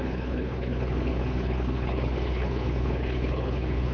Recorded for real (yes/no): no